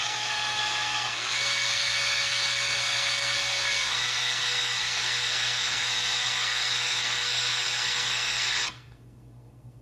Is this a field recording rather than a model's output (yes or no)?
no